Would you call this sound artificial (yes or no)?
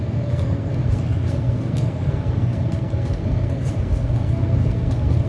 yes